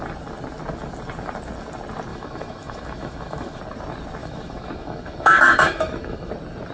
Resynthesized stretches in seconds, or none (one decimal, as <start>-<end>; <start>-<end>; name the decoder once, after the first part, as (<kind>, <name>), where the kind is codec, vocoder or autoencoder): 2.1-3.6 (autoencoder, DAC-VAE); 4.2-6.3